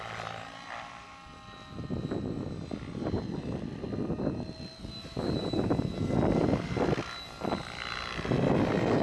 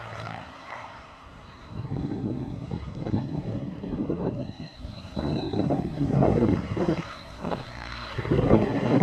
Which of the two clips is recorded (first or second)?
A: first